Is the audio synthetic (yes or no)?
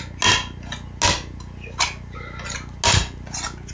no